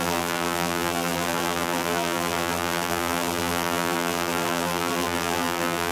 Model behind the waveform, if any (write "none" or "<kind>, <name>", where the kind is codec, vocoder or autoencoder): vocoder, BigVGAN v2